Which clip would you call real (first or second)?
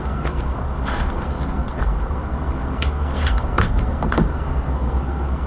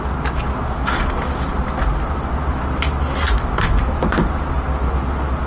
second